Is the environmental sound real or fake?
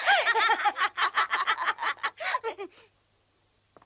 real